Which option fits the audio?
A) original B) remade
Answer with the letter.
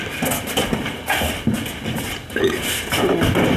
A